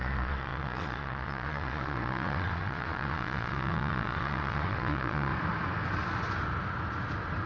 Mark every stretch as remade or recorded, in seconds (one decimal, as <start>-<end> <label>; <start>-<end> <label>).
0.0-5.3 remade; 5.3-7.5 recorded